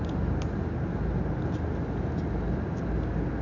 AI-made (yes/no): no